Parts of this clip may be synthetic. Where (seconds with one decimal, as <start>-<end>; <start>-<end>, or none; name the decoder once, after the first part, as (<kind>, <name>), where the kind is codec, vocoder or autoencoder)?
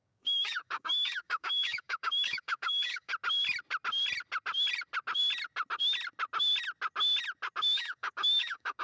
0.0-3.1 (codec, DAC); 7.6-8.8